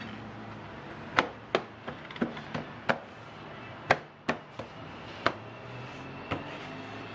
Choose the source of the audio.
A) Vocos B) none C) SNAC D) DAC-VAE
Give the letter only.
B